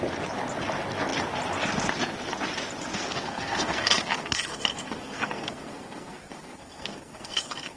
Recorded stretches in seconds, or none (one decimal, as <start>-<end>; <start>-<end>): 0.0-2.9